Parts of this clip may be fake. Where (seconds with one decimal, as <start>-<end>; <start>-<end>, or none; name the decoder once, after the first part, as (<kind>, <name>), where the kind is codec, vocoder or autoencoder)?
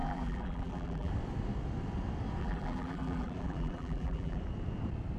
0.0-1.1 (vocoder, BigVGAN v2); 2.4-4.4